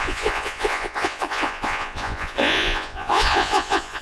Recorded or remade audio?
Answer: remade